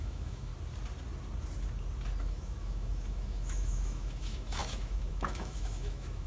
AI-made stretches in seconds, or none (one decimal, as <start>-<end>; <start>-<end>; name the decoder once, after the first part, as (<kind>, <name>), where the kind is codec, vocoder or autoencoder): 0.0-0.5 (autoencoder, DAC-VAE); 2.2-6.3